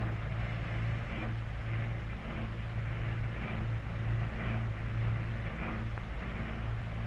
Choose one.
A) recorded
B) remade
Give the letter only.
A